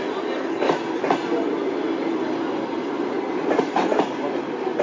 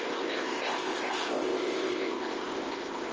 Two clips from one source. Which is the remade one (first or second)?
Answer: second